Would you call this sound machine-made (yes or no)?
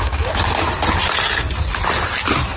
no